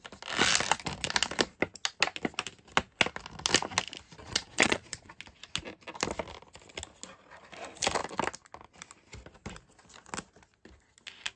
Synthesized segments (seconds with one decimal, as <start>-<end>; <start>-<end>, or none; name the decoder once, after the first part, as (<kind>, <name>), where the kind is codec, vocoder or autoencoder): 4.2-5.2 (vocoder, Vocos)